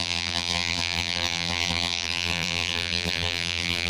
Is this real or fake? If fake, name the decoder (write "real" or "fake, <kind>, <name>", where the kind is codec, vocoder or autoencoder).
fake, vocoder, BigVGAN v2